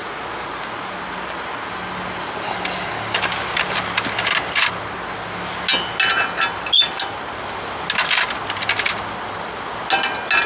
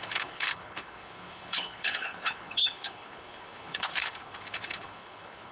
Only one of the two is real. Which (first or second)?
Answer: first